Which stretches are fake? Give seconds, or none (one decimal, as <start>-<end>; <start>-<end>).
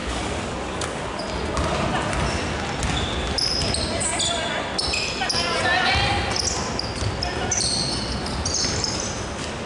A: 0.0-1.2